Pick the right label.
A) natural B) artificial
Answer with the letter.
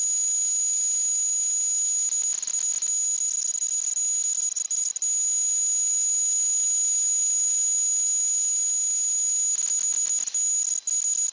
A